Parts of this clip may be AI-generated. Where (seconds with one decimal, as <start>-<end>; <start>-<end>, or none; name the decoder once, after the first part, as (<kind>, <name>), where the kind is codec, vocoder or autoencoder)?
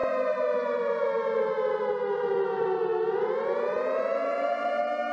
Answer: none